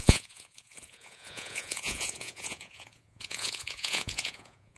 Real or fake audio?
fake